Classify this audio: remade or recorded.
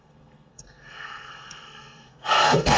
remade